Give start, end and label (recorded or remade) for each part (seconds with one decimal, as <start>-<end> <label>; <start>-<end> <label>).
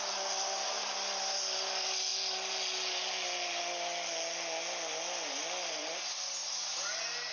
0.0-2.1 remade; 2.1-5.7 recorded; 5.7-6.4 remade; 6.4-7.3 recorded